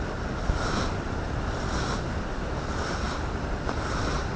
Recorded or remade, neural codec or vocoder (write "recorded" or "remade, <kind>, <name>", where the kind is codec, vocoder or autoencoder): recorded